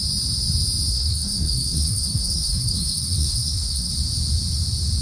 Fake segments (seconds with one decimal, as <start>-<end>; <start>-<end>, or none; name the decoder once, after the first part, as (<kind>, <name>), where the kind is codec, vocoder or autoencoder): 0.9-3.9 (codec, SNAC)